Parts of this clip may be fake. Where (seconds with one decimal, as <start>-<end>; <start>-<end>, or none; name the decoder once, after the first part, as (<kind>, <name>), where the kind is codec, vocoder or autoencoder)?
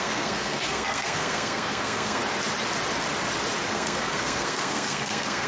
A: 0.0-2.2 (codec, SNAC); 3.7-5.5